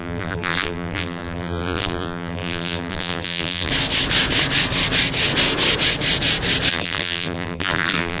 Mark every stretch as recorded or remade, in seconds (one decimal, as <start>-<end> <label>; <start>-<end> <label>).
0.0-3.7 remade; 3.7-6.7 recorded; 6.7-8.2 remade